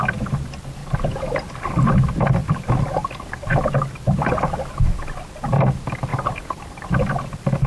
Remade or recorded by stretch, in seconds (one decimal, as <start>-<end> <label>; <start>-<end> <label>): 0.0-0.8 recorded; 0.8-1.5 remade; 1.5-6.1 recorded; 6.1-6.9 remade; 6.9-7.7 recorded